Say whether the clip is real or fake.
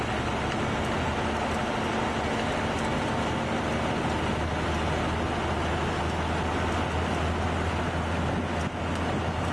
real